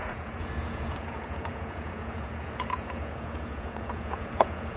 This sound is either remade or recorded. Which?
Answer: remade